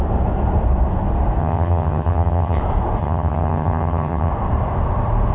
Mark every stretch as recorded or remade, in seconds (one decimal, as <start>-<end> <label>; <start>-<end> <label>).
0.0-1.4 recorded; 1.4-2.6 remade; 2.6-3.0 recorded; 3.0-4.3 remade; 4.3-5.3 recorded

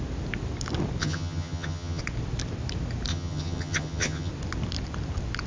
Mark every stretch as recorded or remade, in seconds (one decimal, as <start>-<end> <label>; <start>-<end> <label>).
0.0-1.0 recorded; 1.0-2.0 remade; 2.0-3.1 recorded; 3.1-4.3 remade; 4.3-5.5 recorded

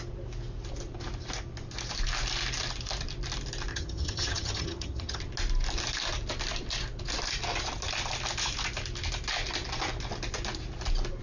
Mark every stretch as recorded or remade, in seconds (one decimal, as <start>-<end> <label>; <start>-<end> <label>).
0.0-3.7 recorded; 3.7-5.2 remade; 5.2-11.2 recorded

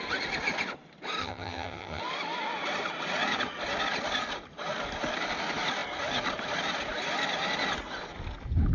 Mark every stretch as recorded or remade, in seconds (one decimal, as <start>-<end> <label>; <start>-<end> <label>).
0.0-1.2 recorded; 1.2-2.0 remade; 2.0-8.7 recorded

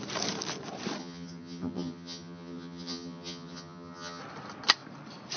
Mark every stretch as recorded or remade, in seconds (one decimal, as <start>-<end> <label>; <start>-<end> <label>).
0.0-1.0 recorded; 1.0-4.2 remade; 4.2-5.4 recorded